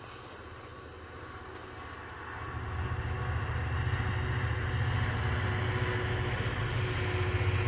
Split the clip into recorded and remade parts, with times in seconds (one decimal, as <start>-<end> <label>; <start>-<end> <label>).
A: 0.0-7.7 recorded